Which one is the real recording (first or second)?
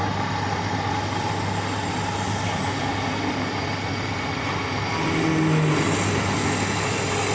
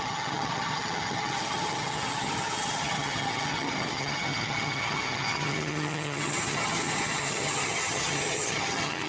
first